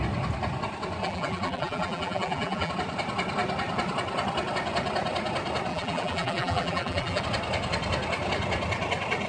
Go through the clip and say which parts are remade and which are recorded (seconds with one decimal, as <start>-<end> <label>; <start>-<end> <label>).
0.0-1.0 recorded; 1.0-2.7 remade; 2.7-5.7 recorded; 5.7-7.2 remade; 7.2-9.3 recorded